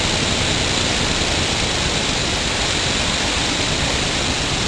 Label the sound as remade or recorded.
recorded